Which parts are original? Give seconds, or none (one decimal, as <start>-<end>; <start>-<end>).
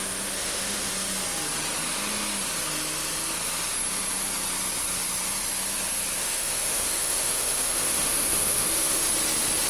0.0-0.4; 0.9-6.2; 9.1-9.7